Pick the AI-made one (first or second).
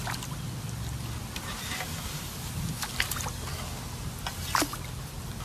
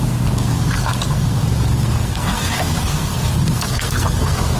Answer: second